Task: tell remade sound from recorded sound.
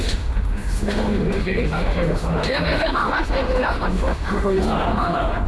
remade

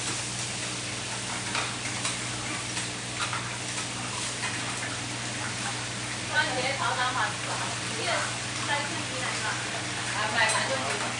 recorded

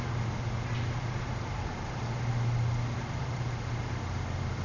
recorded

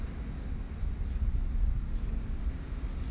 recorded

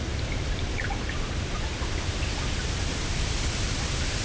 recorded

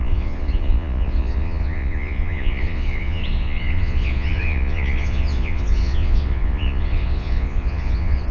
remade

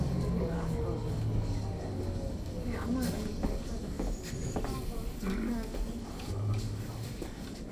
remade